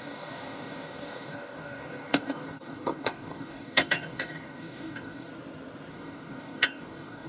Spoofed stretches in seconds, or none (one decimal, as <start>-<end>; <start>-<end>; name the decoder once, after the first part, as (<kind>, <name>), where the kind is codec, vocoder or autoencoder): 0.0-5.3 (codec, DAC); 5.9-7.3